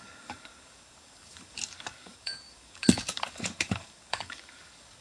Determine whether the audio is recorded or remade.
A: remade